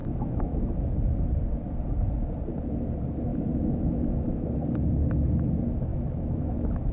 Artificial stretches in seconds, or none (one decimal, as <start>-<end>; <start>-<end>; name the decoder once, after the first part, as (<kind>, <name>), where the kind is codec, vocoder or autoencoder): 0.0-0.9 (autoencoder, DAC-VAE); 3.3-4.0; 5.9-6.9